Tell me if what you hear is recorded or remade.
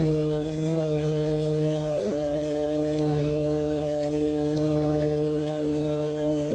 remade